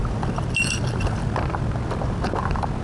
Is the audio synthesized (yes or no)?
no